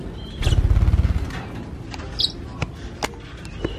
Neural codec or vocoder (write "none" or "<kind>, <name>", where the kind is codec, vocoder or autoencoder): none